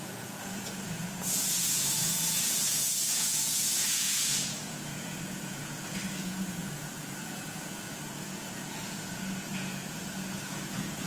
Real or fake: fake